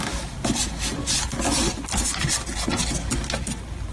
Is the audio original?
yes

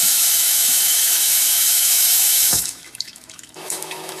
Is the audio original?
no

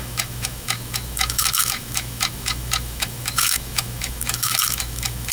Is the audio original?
no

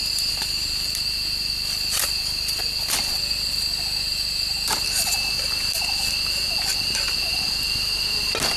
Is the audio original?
yes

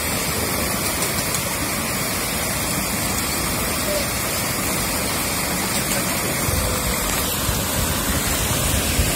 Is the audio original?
yes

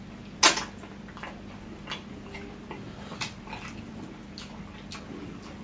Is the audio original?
yes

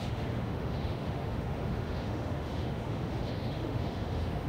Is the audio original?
no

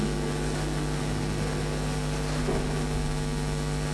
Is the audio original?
yes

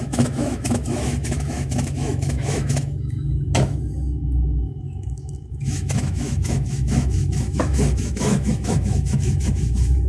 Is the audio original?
no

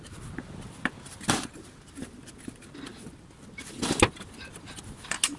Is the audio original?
yes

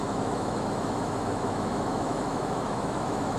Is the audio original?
no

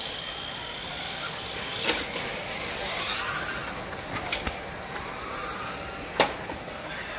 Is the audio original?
yes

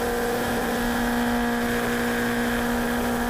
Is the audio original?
yes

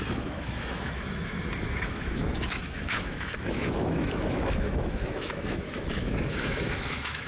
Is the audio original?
no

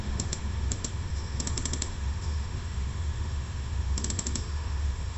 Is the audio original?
no